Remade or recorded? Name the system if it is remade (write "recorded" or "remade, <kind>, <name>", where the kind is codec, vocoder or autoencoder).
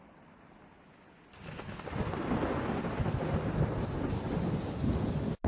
recorded